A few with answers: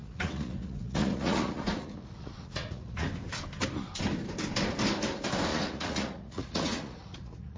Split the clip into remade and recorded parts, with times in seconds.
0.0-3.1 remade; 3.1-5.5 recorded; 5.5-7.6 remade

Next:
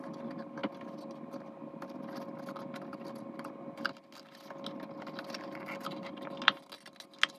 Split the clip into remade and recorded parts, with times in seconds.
0.0-7.4 recorded

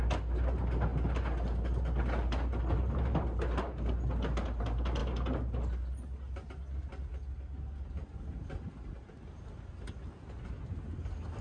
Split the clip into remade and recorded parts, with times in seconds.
0.0-11.4 recorded

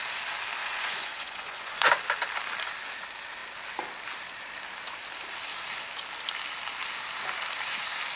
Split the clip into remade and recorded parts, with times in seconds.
0.0-0.6 recorded; 0.6-1.9 remade; 1.9-8.2 recorded

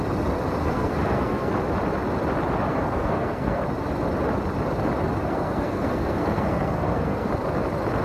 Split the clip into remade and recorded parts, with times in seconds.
0.0-0.6 recorded; 0.6-1.5 remade; 1.5-2.7 recorded; 2.7-3.6 remade; 3.6-5.2 recorded; 5.2-7.3 remade; 7.3-8.0 recorded